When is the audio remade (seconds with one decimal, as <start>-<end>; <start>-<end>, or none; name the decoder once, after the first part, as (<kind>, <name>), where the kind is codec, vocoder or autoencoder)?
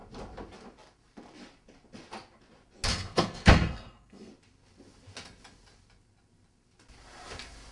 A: 2.9-4.3 (codec, SNAC)